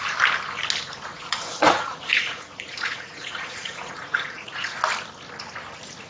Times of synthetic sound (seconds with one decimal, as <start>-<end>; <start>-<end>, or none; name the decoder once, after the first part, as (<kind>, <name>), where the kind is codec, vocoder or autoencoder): 1.1-4.8 (vocoder, Vocos)

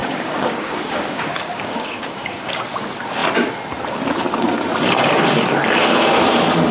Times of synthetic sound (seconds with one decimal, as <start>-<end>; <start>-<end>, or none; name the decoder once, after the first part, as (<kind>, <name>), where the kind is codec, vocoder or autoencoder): 0.0-2.6 (codec, DAC)

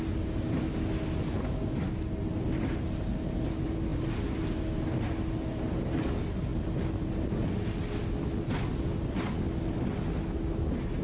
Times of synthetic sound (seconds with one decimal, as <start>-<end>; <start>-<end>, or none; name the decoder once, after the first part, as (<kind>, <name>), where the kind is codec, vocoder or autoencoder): none

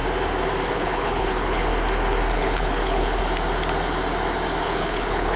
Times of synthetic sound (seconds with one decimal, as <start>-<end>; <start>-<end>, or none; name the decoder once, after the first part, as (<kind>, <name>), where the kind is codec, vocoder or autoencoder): 0.7-1.7 (codec, HILCodec); 2.3-3.2; 4.6-5.4

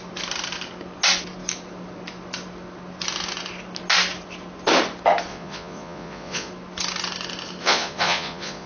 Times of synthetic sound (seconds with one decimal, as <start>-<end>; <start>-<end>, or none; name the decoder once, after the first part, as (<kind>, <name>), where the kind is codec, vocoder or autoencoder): 5.3-6.5 (vocoder, Vocos); 7.6-8.7